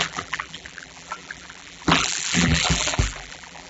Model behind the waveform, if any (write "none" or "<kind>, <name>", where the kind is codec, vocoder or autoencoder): vocoder, BigVGAN v2